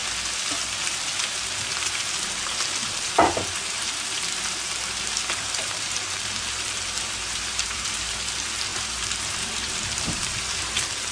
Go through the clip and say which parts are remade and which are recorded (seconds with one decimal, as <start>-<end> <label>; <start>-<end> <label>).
0.0-0.8 recorded; 0.8-11.1 remade